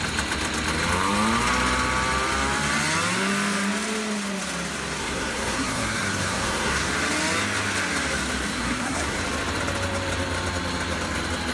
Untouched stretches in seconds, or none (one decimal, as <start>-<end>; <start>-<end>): 0.0-5.0; 6.9-8.5; 9.2-11.5